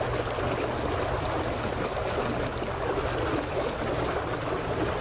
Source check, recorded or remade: recorded